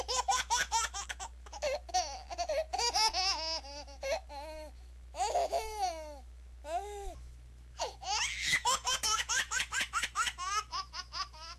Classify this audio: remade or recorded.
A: remade